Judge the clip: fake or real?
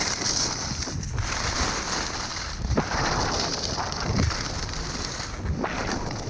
real